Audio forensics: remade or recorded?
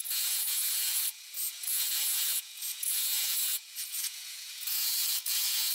remade